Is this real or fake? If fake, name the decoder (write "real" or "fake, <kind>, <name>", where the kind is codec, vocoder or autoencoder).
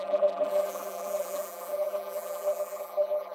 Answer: fake, vocoder, BigVGAN v2